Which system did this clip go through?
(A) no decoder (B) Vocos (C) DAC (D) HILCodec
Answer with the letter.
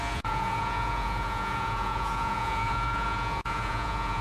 B